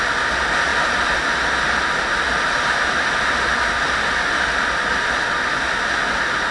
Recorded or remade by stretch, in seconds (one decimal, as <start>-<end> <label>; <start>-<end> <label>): 0.0-6.5 recorded